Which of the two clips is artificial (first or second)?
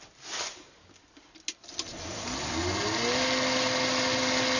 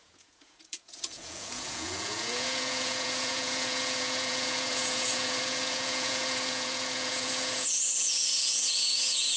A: second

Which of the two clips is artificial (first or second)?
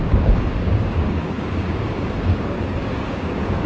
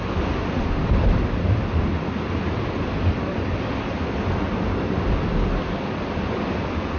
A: first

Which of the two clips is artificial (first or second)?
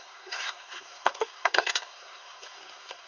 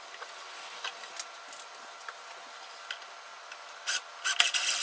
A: first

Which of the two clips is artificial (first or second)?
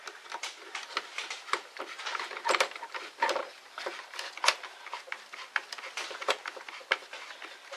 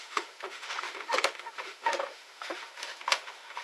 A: second